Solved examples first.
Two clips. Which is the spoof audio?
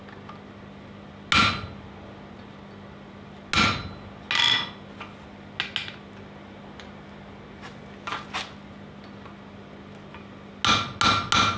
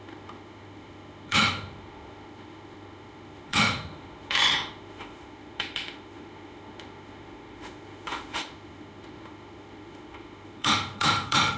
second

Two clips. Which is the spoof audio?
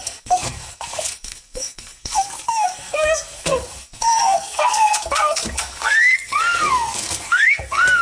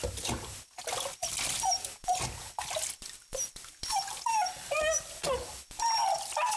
first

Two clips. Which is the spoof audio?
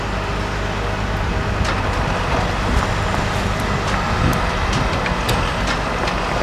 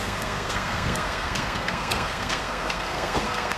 second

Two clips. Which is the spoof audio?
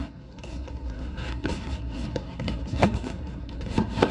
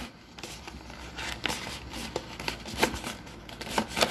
first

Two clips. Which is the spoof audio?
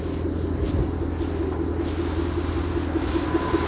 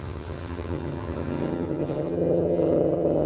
second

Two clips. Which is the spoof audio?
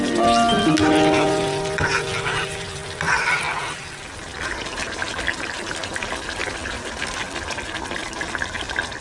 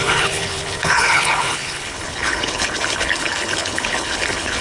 second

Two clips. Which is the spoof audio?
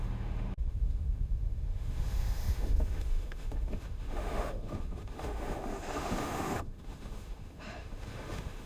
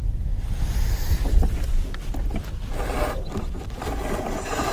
first